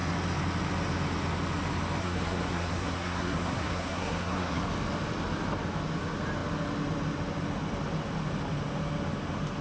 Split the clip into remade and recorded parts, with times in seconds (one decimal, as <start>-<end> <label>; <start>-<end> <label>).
0.0-2.0 recorded; 2.0-4.6 remade; 4.6-9.6 recorded

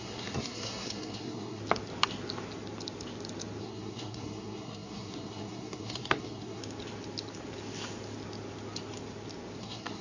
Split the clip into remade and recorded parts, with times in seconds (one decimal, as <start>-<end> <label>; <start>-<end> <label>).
0.0-1.6 remade; 1.6-3.6 recorded; 3.6-6.6 remade; 6.6-9.6 recorded; 9.6-10.0 remade

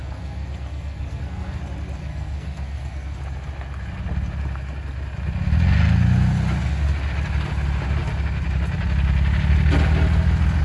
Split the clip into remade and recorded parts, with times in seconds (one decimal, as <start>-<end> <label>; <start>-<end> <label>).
0.0-1.6 remade; 1.6-2.0 recorded; 2.0-3.2 remade; 3.2-10.6 recorded

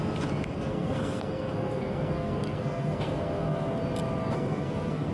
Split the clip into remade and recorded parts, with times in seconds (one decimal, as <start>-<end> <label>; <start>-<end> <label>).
0.0-0.7 recorded; 0.7-3.8 remade; 3.8-4.2 recorded; 4.2-5.1 remade

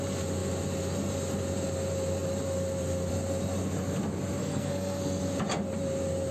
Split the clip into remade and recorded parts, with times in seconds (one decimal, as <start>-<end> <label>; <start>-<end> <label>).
0.0-4.4 recorded; 4.4-5.2 remade; 5.2-6.3 recorded